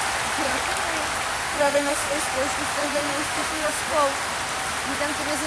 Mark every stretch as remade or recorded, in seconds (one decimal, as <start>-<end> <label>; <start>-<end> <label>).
0.0-1.3 recorded; 1.3-2.2 remade; 2.2-2.8 recorded; 2.8-3.8 remade; 3.8-5.5 recorded